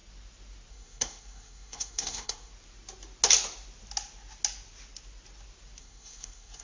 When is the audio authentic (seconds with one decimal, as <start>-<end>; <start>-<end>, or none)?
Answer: 0.0-0.7; 2.5-5.8